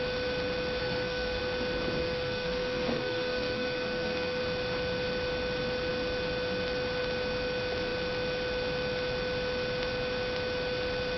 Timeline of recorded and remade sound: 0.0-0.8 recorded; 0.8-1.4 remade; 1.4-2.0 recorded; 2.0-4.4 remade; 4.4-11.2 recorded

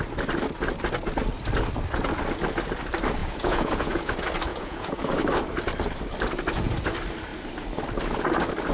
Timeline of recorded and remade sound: 0.0-3.2 recorded; 3.2-4.1 remade; 4.1-4.5 recorded; 4.5-5.0 remade; 5.0-8.7 recorded

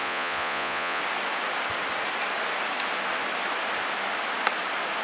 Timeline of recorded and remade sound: 0.0-1.0 remade; 1.0-5.0 recorded

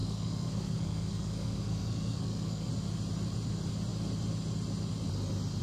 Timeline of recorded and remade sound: 0.0-2.7 remade; 2.7-5.6 recorded